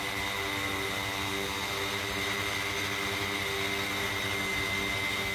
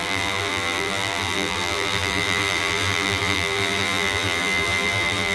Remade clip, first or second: second